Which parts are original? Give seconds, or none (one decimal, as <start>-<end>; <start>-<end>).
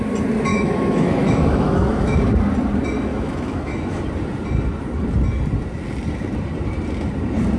0.0-0.5; 2.2-3.1; 4.0-7.6